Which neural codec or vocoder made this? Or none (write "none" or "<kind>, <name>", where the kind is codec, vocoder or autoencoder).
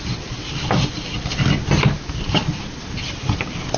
none